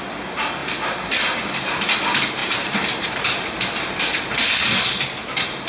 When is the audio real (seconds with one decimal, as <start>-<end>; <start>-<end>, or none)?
0.0-0.6; 1.8-2.4

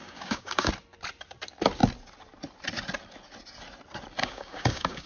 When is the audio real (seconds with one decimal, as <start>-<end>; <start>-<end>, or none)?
0.7-4.2

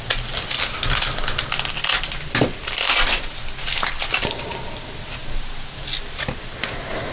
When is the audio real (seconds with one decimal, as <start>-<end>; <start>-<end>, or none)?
0.0-7.1

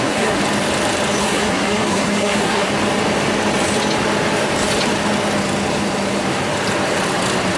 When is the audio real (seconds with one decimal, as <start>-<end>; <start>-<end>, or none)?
0.4-1.2; 2.7-7.6

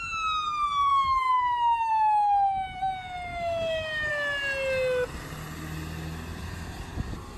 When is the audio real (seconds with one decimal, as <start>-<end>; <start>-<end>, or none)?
0.0-0.9; 1.9-3.3; 4.1-7.4

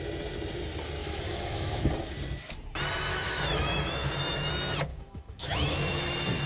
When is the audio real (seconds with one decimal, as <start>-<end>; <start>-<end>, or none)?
0.0-1.0; 1.9-3.1; 4.5-4.9